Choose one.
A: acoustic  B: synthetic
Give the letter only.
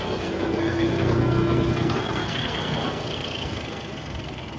B